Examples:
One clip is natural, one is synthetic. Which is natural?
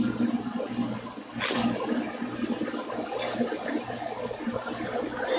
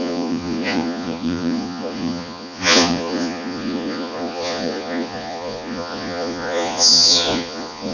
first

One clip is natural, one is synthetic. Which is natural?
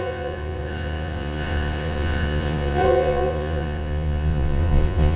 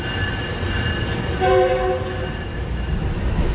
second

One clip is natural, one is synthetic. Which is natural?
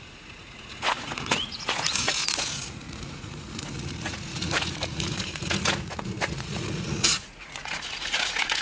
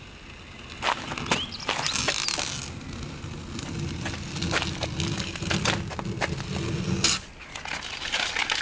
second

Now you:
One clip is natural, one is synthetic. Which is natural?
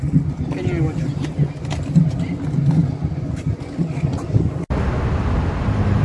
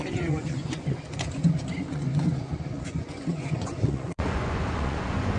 first